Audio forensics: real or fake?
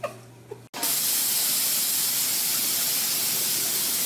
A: real